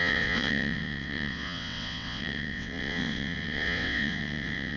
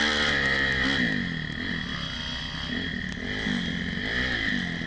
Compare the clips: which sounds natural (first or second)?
second